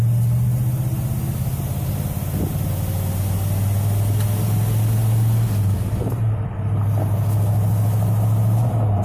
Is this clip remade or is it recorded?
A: recorded